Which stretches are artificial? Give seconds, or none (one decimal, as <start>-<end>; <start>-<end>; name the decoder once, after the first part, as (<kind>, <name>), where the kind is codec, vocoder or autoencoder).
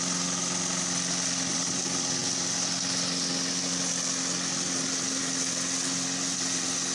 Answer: none